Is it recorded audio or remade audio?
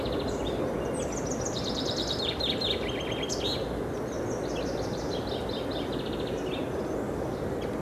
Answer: recorded